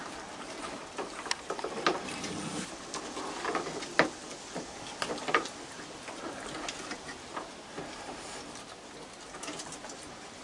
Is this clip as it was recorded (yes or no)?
yes